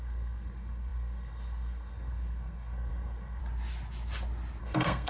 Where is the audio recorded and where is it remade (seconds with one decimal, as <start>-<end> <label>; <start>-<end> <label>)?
0.0-3.4 remade; 3.4-4.6 recorded; 4.6-5.1 remade